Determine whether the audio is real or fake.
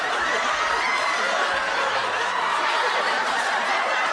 real